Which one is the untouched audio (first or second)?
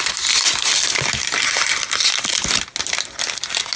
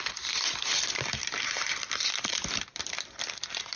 first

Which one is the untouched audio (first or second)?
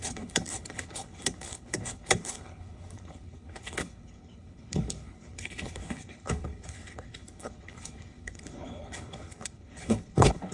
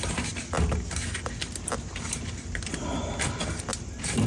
second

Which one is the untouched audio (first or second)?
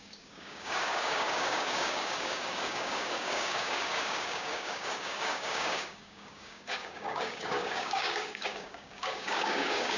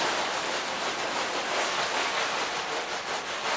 second